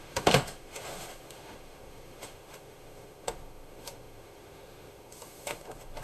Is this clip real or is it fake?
fake